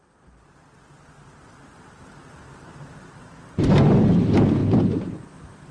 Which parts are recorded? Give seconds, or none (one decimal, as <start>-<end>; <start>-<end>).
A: 0.0-5.7